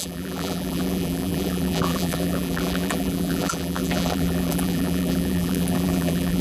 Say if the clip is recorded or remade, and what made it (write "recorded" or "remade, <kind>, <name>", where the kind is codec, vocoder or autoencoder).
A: remade, vocoder, BigVGAN v2